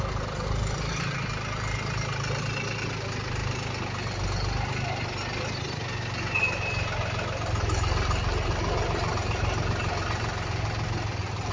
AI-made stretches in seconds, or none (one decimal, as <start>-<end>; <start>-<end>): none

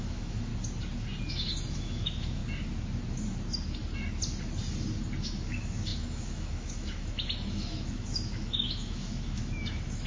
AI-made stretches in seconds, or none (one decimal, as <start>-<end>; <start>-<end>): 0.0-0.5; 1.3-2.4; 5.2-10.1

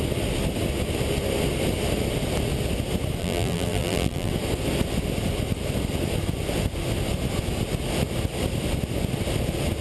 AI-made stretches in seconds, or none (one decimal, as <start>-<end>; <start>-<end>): 3.2-4.3

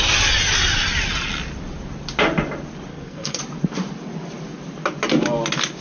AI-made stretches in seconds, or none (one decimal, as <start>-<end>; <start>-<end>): 2.9-3.4

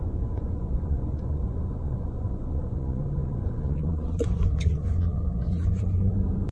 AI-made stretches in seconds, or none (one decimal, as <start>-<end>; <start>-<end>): 0.0-6.5

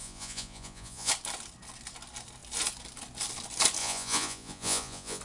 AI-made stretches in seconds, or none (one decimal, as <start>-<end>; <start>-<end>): 0.0-1.1; 3.8-5.2